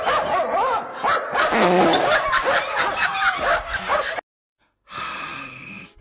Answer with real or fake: real